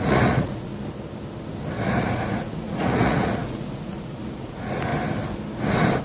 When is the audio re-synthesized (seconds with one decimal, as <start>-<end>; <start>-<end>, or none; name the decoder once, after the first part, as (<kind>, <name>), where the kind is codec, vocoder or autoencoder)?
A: 0.0-0.7 (vocoder, Vocos); 1.8-4.9